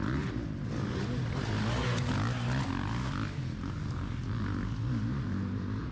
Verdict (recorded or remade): recorded